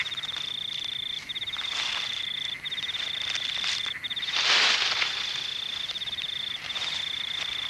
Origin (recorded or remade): recorded